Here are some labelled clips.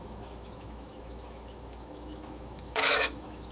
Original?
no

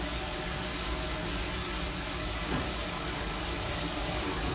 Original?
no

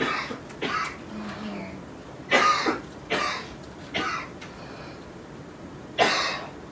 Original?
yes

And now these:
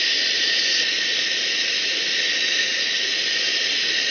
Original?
yes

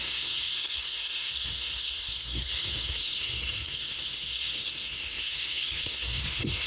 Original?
no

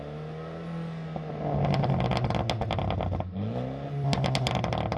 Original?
yes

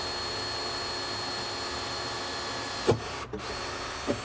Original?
yes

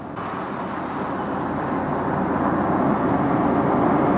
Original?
yes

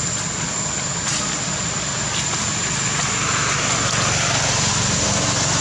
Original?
yes